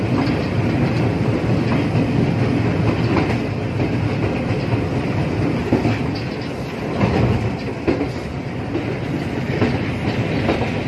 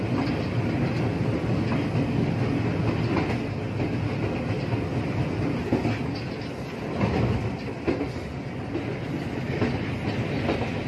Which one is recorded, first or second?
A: second